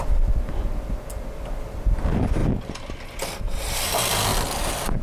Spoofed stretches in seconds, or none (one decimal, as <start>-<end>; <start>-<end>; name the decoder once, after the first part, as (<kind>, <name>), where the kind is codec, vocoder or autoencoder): none